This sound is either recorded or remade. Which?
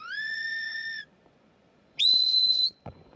remade